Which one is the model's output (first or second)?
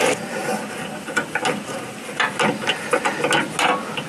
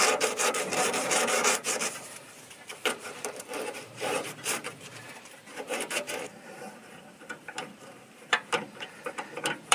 second